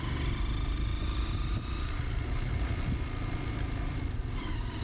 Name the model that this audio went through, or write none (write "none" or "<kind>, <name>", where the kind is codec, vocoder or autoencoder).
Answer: none